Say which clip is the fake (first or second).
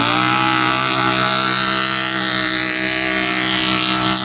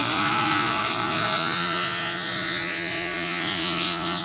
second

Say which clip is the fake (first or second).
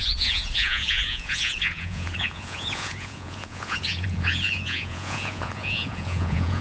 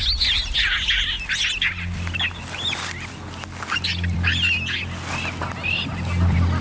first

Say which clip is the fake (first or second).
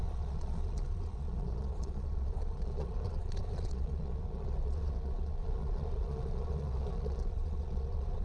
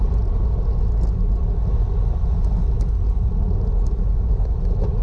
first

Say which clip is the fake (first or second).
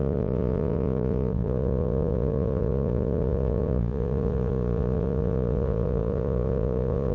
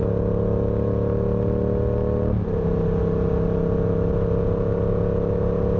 first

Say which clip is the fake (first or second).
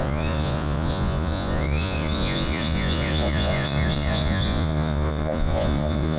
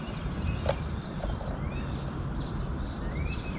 first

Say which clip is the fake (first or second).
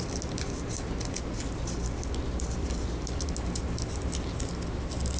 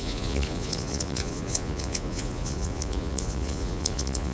second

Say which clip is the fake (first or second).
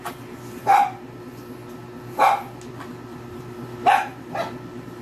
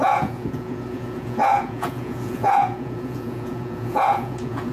second